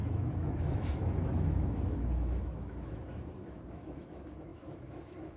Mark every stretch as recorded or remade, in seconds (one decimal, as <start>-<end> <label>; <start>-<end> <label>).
0.0-5.4 remade

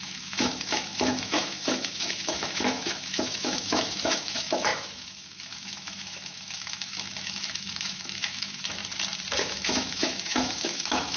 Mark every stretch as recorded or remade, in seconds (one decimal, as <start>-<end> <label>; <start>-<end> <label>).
0.0-8.8 remade; 8.8-9.4 recorded; 9.4-11.2 remade

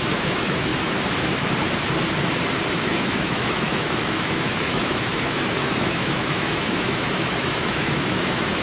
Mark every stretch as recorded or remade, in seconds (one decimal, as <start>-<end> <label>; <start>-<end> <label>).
0.0-0.7 remade; 0.7-2.7 recorded; 2.7-8.6 remade

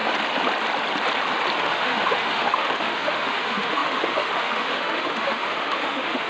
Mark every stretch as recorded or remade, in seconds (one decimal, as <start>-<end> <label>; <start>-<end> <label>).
0.0-1.6 recorded; 1.6-6.3 remade